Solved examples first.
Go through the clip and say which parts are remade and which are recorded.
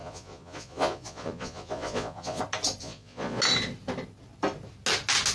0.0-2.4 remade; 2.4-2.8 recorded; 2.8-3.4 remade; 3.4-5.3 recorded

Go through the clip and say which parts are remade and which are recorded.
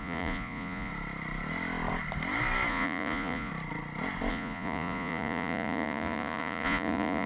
0.0-0.9 remade; 0.9-2.7 recorded; 2.7-3.5 remade; 3.5-4.3 recorded; 4.3-7.3 remade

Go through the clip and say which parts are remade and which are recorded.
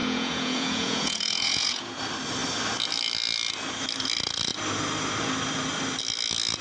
0.0-2.0 remade; 2.0-6.6 recorded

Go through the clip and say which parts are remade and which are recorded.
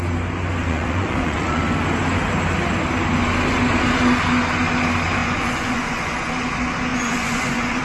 0.0-0.6 recorded; 0.6-1.6 remade; 1.6-5.2 recorded; 5.2-6.5 remade; 6.5-6.9 recorded; 6.9-7.8 remade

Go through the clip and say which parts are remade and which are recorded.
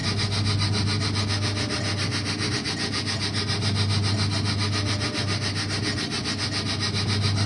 0.0-7.5 recorded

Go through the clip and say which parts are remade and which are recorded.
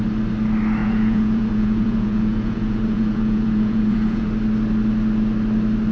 0.0-0.8 recorded; 0.8-4.3 remade; 4.3-5.9 recorded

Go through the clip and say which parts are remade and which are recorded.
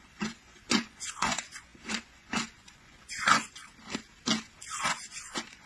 0.0-3.6 remade; 3.6-4.8 recorded; 4.8-5.7 remade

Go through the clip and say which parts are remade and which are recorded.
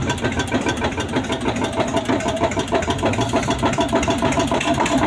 0.0-5.1 recorded